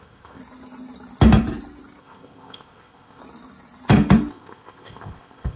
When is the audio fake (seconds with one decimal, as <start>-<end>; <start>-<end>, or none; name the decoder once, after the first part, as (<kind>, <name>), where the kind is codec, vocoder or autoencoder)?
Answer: 0.0-0.4 (codec, ZipCodec); 2.0-3.2; 4.3-5.6